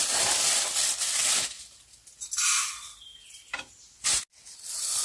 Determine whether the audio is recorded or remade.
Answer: recorded